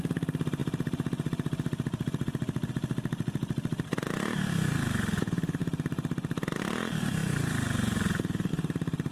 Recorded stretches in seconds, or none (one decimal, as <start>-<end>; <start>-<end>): none